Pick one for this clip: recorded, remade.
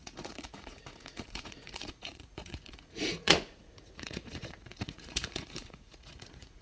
remade